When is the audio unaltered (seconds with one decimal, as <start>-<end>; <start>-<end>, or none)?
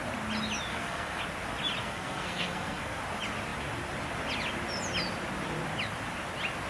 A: 0.0-0.7; 1.2-1.8; 3.0-6.7